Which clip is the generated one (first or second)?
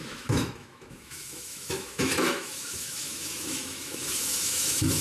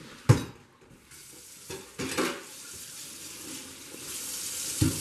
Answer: first